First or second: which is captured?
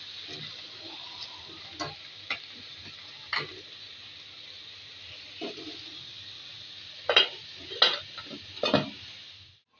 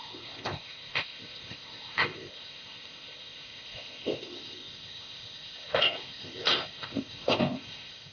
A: first